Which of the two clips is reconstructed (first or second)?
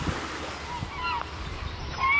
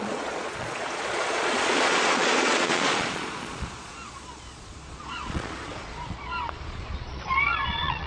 second